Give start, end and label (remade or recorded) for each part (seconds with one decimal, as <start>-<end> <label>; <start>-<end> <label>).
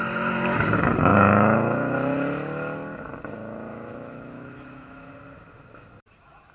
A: 0.0-3.7 recorded; 3.7-5.1 remade; 5.1-6.5 recorded